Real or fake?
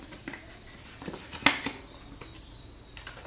real